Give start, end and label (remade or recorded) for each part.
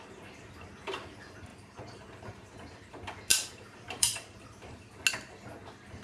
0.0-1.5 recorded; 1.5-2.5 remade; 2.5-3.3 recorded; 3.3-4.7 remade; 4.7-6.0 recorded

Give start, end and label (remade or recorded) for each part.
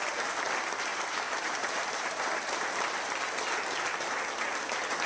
0.0-0.9 recorded; 0.9-2.6 remade; 2.6-5.1 recorded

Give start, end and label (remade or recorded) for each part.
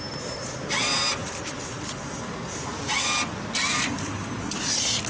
0.0-1.2 recorded; 1.2-1.9 remade; 1.9-5.1 recorded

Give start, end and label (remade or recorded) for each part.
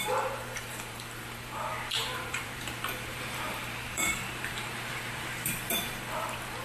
0.0-6.6 remade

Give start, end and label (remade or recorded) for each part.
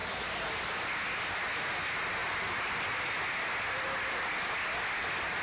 0.0-2.2 recorded; 2.2-5.4 remade